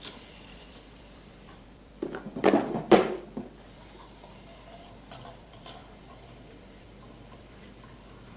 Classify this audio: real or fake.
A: fake